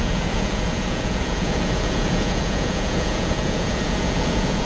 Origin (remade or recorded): remade